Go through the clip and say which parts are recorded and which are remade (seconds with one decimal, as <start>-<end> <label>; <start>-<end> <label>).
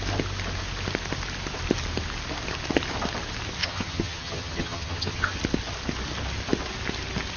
0.0-3.6 recorded; 3.6-5.4 remade; 5.4-7.4 recorded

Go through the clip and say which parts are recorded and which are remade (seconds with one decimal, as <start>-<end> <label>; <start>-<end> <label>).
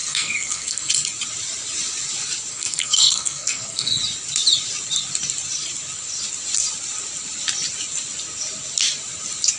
0.0-0.9 remade; 0.9-2.5 recorded; 2.5-4.0 remade; 4.0-9.6 recorded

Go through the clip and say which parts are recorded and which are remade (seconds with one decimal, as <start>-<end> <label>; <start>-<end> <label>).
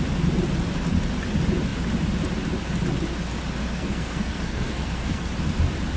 0.0-3.6 recorded; 3.6-5.3 remade; 5.3-6.0 recorded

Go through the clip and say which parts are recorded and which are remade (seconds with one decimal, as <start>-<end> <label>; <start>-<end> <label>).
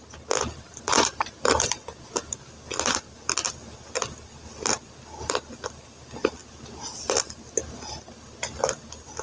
0.0-0.7 recorded; 0.7-2.1 remade; 2.1-9.2 recorded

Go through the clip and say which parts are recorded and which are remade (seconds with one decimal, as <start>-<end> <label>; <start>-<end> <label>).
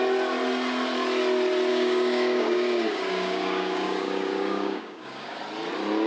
0.0-1.7 recorded; 1.7-5.4 remade; 5.4-6.1 recorded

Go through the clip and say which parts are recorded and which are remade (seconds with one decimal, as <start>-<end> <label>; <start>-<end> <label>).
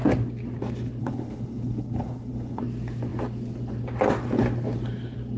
0.0-1.0 recorded; 1.0-2.6 remade; 2.6-5.4 recorded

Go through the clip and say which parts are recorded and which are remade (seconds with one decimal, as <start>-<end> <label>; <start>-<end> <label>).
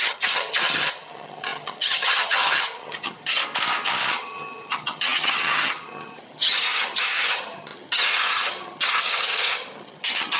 0.0-3.4 remade; 3.4-4.1 recorded; 4.1-10.4 remade